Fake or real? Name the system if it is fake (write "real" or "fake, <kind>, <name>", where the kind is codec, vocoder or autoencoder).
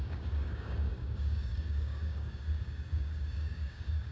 fake, codec, DAC